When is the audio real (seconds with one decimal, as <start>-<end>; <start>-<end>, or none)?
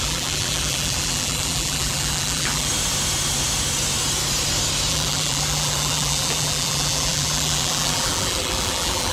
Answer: 2.7-4.9